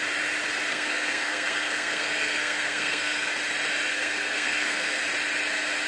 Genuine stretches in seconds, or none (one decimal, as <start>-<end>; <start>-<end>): 0.0-0.7; 3.3-3.9; 5.0-5.9

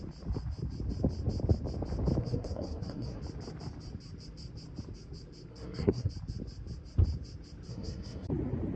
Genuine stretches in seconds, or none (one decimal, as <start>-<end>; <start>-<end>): 0.0-2.2; 3.2-5.5; 6.1-7.7; 8.3-8.8